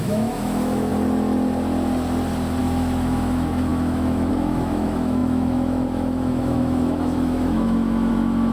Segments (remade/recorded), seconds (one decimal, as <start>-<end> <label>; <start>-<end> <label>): 0.0-0.9 remade; 0.9-2.6 recorded; 2.6-8.5 remade